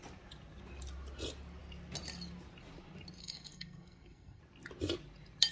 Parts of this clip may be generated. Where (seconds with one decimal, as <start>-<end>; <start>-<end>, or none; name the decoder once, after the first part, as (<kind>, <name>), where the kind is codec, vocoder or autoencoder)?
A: 3.2-4.4 (codec, SNAC)